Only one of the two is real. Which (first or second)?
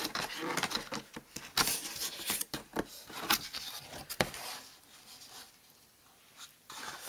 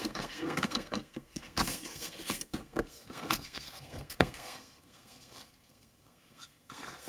first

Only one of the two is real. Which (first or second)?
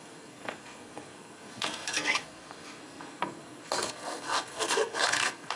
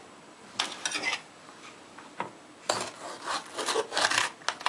second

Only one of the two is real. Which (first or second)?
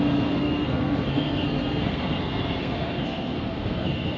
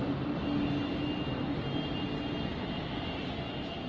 second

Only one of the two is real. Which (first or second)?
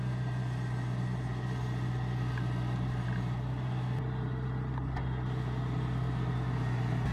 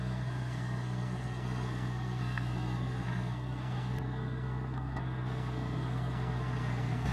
first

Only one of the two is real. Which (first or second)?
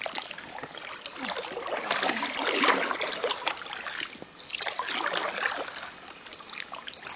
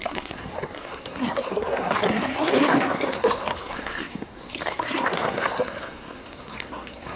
first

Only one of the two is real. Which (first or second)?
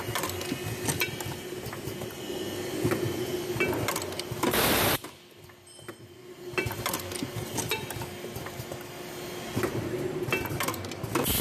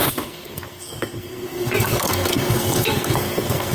first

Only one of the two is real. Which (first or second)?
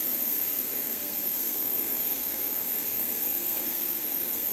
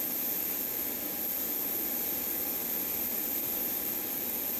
second